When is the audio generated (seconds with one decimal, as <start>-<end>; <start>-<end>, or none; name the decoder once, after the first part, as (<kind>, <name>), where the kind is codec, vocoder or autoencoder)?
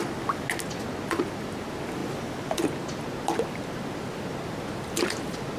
none